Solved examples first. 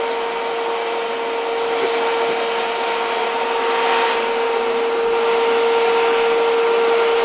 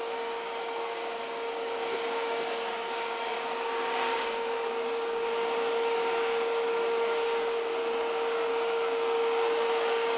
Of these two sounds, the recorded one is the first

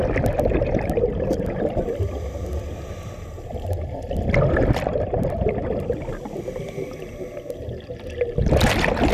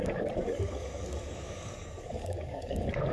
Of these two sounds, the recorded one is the first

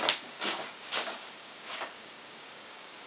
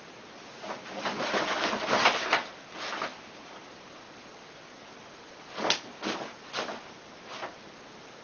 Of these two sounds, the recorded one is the second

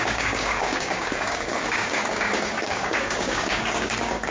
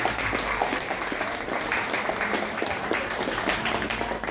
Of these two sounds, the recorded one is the second